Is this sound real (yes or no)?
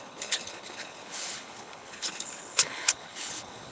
no